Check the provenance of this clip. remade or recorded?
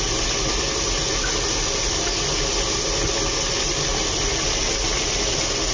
recorded